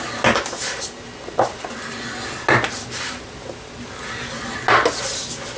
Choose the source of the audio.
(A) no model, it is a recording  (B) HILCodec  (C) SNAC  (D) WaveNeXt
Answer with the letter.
A